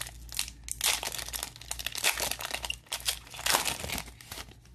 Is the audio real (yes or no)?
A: yes